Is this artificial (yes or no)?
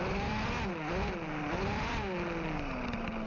no